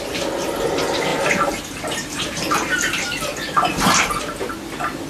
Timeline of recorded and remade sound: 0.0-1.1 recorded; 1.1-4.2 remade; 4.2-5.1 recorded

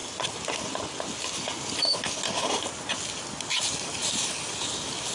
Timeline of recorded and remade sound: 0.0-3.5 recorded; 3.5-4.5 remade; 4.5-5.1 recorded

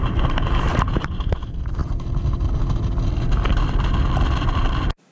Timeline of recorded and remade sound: 0.0-1.8 remade; 1.8-5.1 recorded

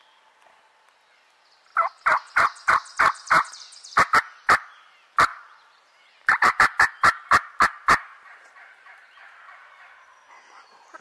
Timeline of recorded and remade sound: 0.0-1.7 recorded; 1.7-3.5 remade; 3.5-5.3 recorded; 5.3-9.7 remade; 9.7-11.0 recorded